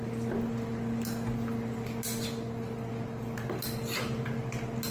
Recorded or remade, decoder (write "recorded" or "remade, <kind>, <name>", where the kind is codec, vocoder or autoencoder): recorded